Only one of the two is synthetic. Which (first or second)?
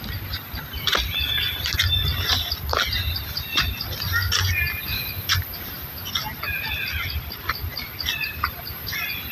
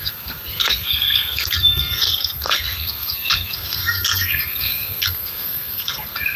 second